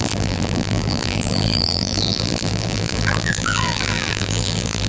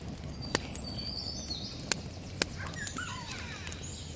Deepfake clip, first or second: first